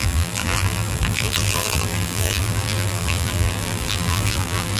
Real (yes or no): no